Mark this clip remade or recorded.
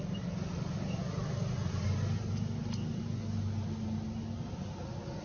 recorded